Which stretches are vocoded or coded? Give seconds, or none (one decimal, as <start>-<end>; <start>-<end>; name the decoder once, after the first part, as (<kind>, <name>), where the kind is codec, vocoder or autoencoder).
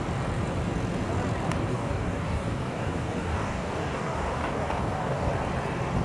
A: 1.7-5.3 (codec, DAC)